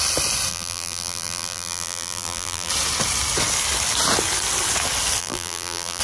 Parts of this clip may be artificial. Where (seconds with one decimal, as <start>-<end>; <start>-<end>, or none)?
0.5-2.7; 5.2-6.0